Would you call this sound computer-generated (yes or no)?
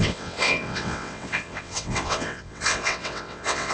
yes